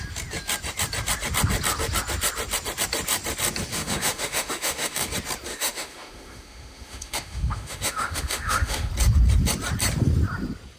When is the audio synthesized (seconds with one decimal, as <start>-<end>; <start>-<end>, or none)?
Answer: 3.7-5.1; 5.5-8.9